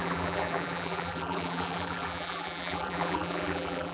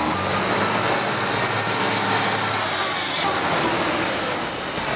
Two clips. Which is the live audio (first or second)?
second